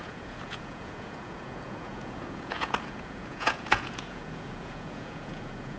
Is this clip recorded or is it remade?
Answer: remade